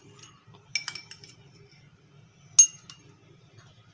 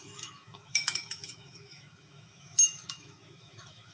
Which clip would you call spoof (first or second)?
second